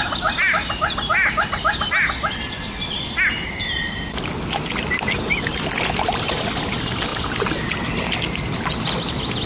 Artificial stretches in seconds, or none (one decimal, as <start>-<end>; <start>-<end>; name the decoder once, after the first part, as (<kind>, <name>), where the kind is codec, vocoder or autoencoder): none